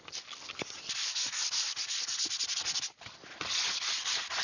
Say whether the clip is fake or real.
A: real